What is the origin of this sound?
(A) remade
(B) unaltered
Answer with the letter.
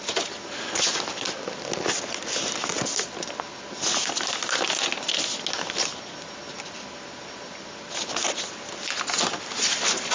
B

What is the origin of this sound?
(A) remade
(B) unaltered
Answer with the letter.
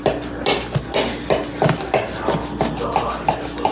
B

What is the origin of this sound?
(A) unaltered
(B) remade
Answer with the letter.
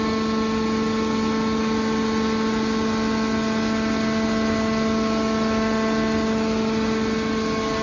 A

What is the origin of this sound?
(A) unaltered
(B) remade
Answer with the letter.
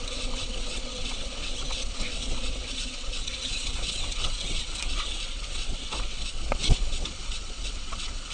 B